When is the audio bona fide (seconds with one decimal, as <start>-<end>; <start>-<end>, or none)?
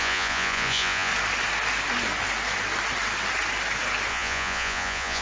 1.1-4.1